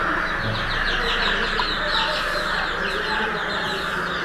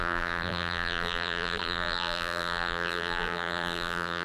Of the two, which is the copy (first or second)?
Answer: second